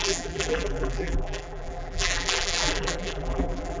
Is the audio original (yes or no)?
no